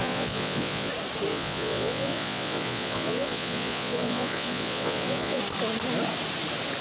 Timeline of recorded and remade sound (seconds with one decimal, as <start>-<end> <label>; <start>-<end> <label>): 0.0-0.9 remade; 0.9-1.3 recorded; 1.3-5.4 remade; 5.4-6.8 recorded